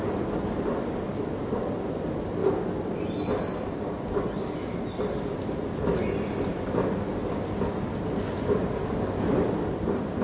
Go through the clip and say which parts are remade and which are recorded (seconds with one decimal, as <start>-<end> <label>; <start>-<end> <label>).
0.0-10.2 recorded